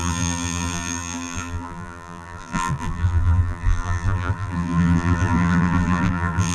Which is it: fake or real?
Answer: fake